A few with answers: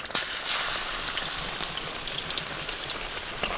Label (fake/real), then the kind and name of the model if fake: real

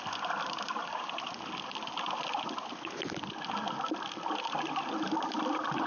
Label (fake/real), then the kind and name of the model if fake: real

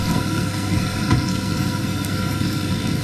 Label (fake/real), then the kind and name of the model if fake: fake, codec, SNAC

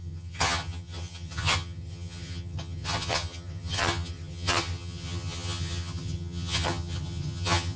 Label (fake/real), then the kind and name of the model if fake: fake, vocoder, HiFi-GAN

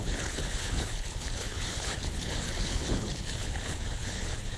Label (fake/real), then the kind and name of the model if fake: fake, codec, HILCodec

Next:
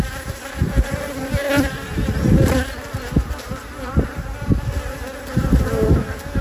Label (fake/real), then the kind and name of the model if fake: real